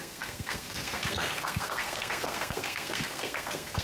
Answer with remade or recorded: remade